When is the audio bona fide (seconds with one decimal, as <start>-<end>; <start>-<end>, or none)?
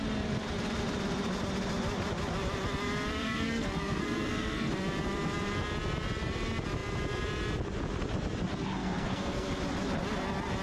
0.0-3.2; 4.7-8.8; 9.6-10.6